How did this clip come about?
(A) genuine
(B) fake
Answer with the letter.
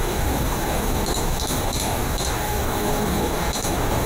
B